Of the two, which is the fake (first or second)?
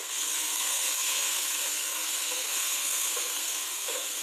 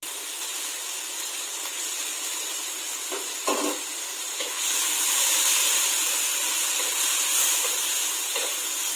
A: first